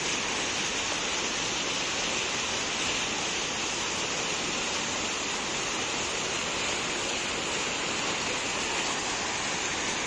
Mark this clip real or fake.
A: real